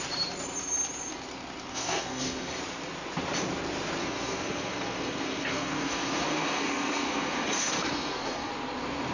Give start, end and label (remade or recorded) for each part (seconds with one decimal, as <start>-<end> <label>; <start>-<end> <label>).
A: 0.0-1.7 recorded; 1.7-2.6 remade; 2.6-4.0 recorded; 4.0-8.5 remade; 8.5-9.1 recorded

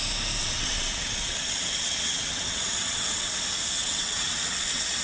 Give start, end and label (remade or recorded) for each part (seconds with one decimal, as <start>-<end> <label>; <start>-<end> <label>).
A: 0.0-0.4 recorded; 0.4-3.4 remade; 3.4-3.8 recorded; 3.8-5.0 remade

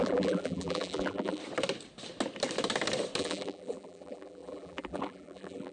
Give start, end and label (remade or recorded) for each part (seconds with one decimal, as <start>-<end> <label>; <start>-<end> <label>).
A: 0.0-1.4 remade; 1.4-3.2 recorded; 3.2-5.7 remade

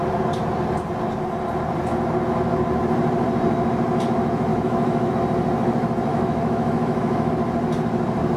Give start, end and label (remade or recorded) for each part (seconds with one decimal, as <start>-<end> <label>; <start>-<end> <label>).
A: 0.0-4.5 recorded; 4.5-5.1 remade; 5.1-6.1 recorded; 6.1-7.3 remade; 7.3-8.4 recorded

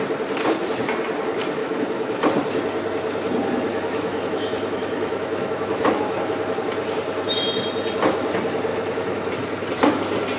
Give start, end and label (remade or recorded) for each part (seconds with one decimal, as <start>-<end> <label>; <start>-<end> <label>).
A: 0.0-1.6 recorded; 1.6-2.2 remade; 2.2-3.7 recorded; 3.7-6.5 remade; 6.5-8.7 recorded; 8.7-9.3 remade; 9.3-10.4 recorded

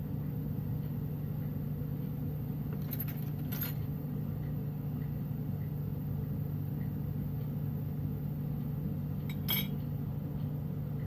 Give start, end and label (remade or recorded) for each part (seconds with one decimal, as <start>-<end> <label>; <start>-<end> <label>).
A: 0.0-11.1 recorded

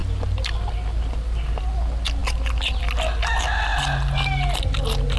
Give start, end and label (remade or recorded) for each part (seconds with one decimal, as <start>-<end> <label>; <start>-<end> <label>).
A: 0.0-5.2 recorded

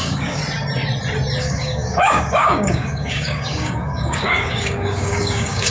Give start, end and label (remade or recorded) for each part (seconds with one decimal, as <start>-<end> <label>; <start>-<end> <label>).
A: 0.0-0.4 remade; 0.4-1.4 recorded; 1.4-5.7 remade